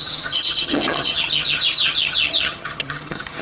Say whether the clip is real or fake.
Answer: fake